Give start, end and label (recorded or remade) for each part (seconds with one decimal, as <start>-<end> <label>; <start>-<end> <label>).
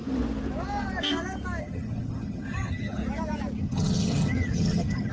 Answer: 0.0-1.6 recorded; 1.6-3.0 remade; 3.0-3.6 recorded; 3.6-5.1 remade